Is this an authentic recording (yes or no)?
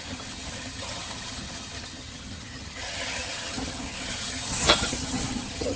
no